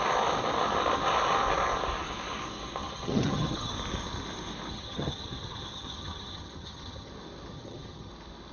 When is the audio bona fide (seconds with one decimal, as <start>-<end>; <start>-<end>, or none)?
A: 0.0-2.8; 3.7-4.7; 7.1-7.5; 8.1-8.5

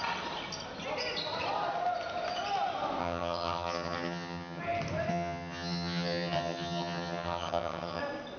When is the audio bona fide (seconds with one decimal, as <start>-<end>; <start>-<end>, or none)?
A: 0.0-3.0; 4.6-5.1; 8.0-8.4

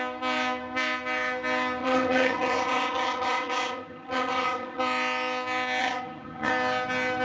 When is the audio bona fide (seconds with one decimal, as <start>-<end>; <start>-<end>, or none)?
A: 0.0-1.8; 4.8-5.8; 6.5-7.2

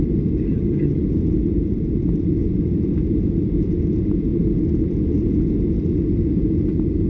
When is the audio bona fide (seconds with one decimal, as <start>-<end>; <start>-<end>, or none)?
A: 0.0-0.5; 1.0-7.1